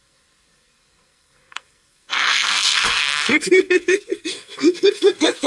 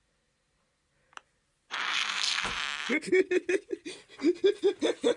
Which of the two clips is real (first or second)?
second